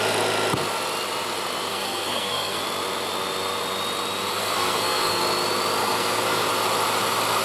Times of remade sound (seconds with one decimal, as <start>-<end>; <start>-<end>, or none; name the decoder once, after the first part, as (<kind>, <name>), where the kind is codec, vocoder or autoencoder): 1.7-2.6 (codec, SNAC); 4.3-5.2; 5.8-6.5